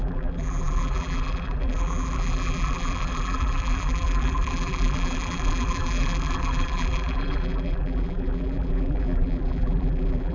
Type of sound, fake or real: fake